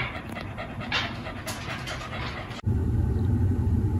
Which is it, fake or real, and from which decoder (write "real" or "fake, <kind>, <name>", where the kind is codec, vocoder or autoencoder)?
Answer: real